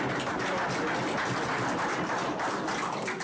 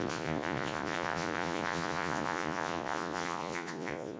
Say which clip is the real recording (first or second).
first